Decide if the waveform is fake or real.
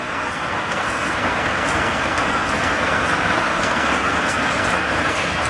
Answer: fake